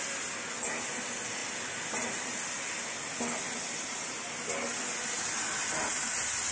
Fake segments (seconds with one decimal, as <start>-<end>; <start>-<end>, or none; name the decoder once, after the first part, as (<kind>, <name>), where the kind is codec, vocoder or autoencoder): none